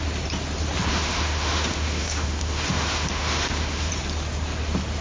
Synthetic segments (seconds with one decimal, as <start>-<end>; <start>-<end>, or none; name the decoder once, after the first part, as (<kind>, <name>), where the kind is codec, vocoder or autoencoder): 0.9-3.9 (autoencoder, DAC-VAE)

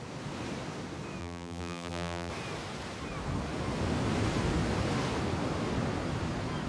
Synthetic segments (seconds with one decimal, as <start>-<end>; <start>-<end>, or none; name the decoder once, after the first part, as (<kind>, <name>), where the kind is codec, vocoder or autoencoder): 1.2-2.3 (vocoder, BigVGAN v2)

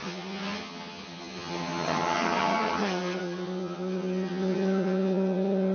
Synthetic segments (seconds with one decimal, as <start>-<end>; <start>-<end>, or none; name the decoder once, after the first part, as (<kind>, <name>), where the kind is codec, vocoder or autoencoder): 0.0-5.7 (vocoder, HiFi-GAN)

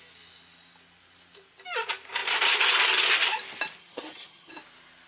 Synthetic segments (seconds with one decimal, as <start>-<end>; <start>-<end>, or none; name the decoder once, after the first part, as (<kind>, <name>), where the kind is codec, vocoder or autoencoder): 3.8-4.5 (vocoder, HiFi-GAN)

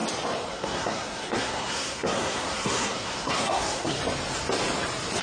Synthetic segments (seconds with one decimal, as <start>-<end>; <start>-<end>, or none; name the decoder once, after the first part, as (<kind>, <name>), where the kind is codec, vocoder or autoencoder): 0.5-4.0 (codec, SNAC)

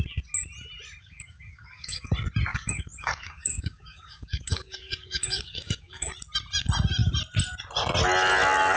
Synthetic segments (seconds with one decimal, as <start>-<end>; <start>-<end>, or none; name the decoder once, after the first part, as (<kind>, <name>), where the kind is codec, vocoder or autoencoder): 1.0-2.1 (codec, DAC); 2.5-6.1

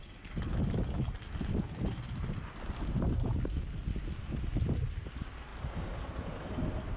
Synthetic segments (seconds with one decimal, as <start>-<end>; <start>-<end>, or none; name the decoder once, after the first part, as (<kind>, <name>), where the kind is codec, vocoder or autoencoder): none